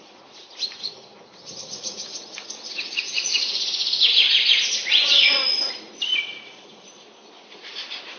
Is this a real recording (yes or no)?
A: no